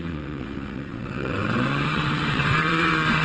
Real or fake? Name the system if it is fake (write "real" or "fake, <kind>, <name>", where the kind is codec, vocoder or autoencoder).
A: fake, vocoder, WaveNeXt